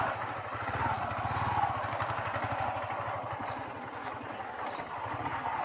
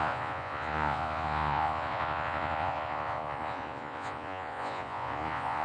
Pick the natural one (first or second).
first